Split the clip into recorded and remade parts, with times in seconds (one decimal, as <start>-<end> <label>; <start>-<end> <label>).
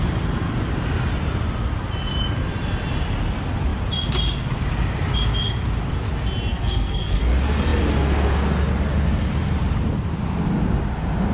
0.0-6.5 recorded; 6.5-7.2 remade; 7.2-11.3 recorded